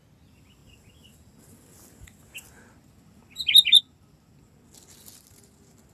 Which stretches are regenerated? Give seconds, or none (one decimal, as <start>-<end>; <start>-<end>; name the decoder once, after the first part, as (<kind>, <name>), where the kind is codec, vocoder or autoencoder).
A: none